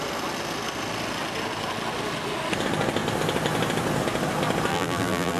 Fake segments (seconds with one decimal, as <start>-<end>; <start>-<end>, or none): 4.7-5.4